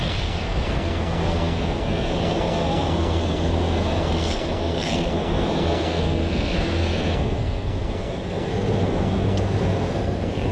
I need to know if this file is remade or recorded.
remade